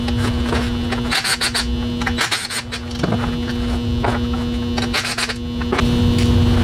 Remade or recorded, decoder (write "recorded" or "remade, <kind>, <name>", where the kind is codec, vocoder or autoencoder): recorded